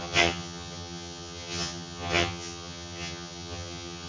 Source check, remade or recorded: remade